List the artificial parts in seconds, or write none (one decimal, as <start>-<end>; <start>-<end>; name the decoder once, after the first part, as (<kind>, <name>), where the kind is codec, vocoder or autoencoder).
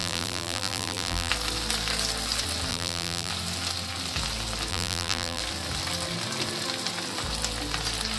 0.0-1.3 (vocoder, BigVGAN v2); 2.7-3.3; 4.7-5.4